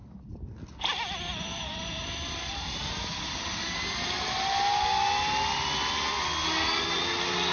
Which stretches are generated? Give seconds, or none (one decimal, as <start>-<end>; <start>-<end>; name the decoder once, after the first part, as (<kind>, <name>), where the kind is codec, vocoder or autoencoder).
1.5-3.4 (vocoder, BigVGAN v2)